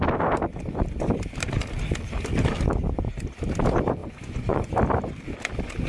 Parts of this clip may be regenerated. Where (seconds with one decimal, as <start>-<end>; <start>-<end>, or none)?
4.0-4.7